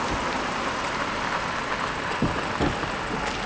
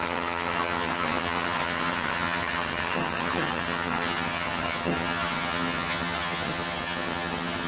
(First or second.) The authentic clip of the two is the first